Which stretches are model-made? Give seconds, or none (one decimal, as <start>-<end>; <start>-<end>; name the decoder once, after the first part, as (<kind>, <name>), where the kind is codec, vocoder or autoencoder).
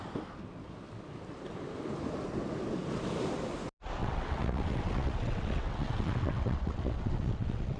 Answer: 4.0-7.8 (vocoder, WaveNeXt)